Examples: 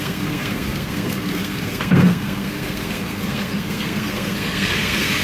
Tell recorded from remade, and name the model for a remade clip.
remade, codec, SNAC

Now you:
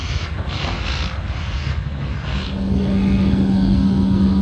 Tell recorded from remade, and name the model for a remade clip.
remade, codec, SNAC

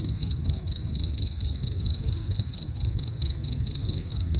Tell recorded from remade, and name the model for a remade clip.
remade, codec, SNAC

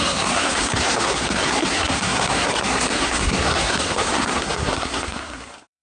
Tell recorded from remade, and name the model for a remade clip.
remade, codec, SNAC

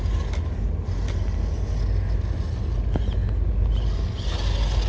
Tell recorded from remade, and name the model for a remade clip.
recorded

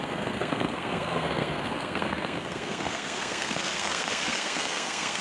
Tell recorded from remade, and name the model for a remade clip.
remade, codec, SNAC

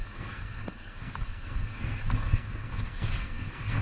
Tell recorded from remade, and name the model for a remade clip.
remade, codec, SNAC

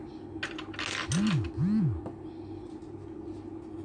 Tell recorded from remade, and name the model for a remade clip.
recorded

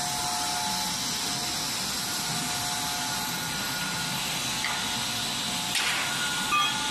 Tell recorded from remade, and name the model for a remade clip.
recorded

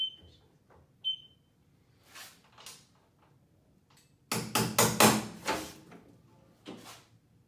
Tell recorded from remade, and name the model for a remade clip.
recorded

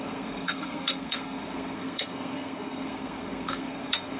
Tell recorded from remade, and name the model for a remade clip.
remade, codec, SNAC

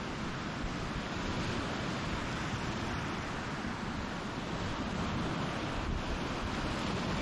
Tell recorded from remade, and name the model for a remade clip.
recorded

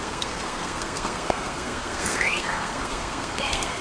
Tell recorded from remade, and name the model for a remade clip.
remade, codec, SNAC